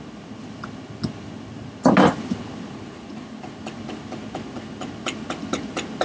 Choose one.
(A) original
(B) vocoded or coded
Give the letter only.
A